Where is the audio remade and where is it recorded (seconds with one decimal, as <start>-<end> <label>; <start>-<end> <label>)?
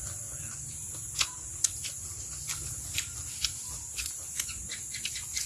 0.0-5.5 recorded